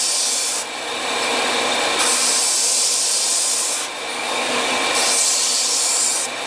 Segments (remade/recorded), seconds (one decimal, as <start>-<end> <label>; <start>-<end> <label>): 0.0-4.1 recorded; 4.1-4.7 remade; 4.7-6.5 recorded